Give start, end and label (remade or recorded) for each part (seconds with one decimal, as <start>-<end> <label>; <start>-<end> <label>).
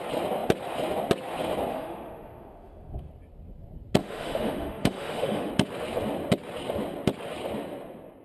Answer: 0.0-1.7 recorded; 1.7-3.1 remade; 3.1-4.0 recorded; 4.0-5.5 remade; 5.5-8.2 recorded